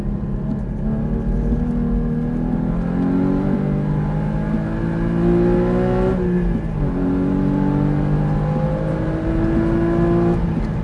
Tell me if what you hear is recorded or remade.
recorded